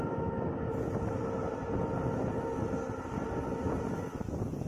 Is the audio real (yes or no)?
yes